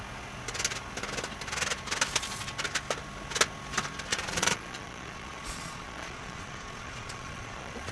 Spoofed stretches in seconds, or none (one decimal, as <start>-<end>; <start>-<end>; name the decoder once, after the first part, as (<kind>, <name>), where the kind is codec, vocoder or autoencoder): 4.1-7.9 (vocoder, Vocos)